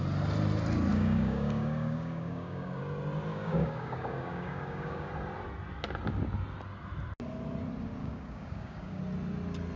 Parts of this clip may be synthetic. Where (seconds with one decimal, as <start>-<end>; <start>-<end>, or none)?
0.9-2.8; 3.3-5.1; 8.0-9.0